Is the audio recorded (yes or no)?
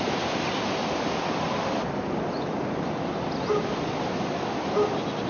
yes